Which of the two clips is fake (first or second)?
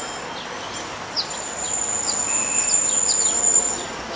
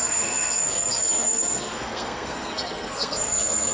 second